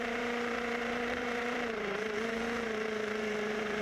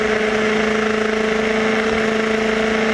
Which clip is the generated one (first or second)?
first